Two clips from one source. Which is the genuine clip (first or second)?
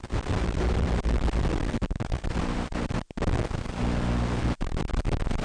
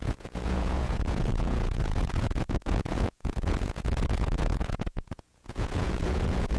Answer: first